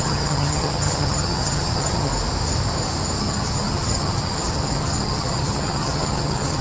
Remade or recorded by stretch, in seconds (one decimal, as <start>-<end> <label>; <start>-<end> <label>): 0.0-2.1 remade; 2.1-3.2 recorded; 3.2-6.6 remade